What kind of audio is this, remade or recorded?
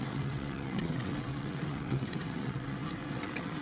remade